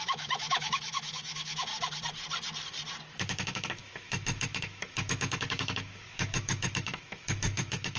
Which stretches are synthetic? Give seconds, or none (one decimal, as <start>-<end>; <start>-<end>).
0.0-1.7; 3.1-8.0